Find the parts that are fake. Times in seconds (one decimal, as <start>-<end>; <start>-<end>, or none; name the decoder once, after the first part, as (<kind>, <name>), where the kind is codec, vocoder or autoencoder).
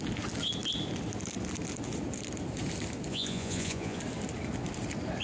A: 3.1-4.0 (vocoder, Vocos)